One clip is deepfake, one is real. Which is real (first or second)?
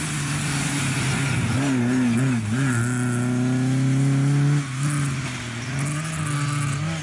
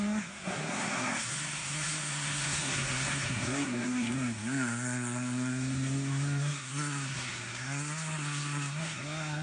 first